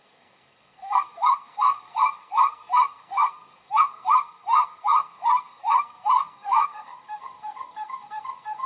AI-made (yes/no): yes